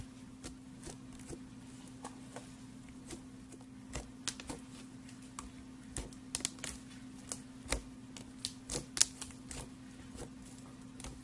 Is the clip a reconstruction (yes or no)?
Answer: no